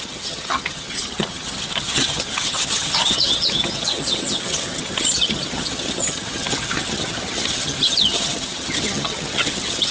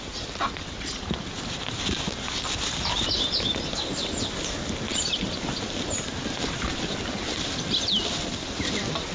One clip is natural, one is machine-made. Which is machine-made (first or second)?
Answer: first